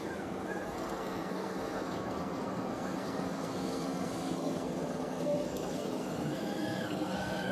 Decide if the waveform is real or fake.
fake